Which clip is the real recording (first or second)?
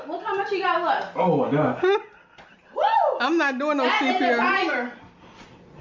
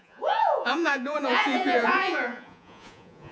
first